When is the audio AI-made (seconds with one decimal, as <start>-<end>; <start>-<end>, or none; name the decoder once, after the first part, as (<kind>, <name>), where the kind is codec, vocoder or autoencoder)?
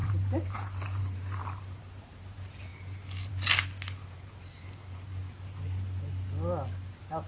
0.0-1.4 (vocoder, BigVGAN v2)